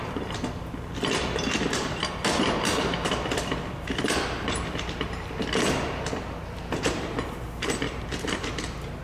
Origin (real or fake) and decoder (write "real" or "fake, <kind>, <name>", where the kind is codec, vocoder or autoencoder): fake, vocoder, BigVGAN v2